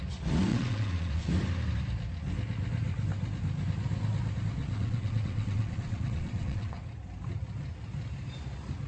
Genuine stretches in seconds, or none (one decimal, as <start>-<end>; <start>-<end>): 0.0-0.5; 1.3-4.6; 6.8-8.9